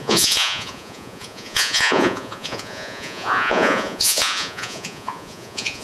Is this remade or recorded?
remade